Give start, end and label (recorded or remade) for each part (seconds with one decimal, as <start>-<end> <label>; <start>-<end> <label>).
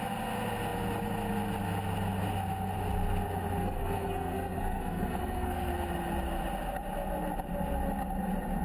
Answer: 0.0-3.6 recorded; 3.6-5.7 remade; 5.7-8.6 recorded